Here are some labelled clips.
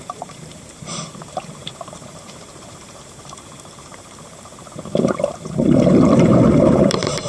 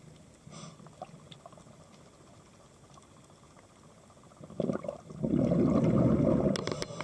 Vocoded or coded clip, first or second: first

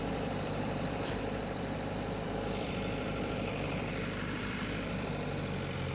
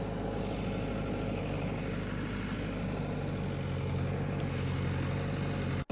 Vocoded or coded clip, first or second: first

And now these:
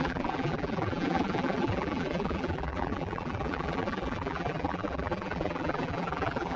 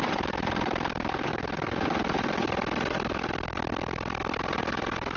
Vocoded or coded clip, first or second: first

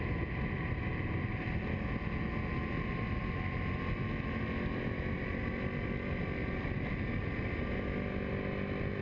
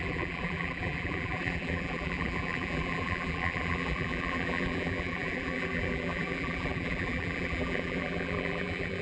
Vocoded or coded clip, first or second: second